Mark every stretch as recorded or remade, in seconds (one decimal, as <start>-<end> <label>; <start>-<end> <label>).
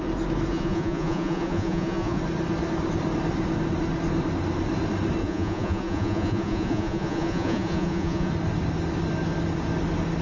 0.0-0.5 recorded; 0.5-2.2 remade; 2.2-5.2 recorded; 5.2-8.3 remade; 8.3-10.2 recorded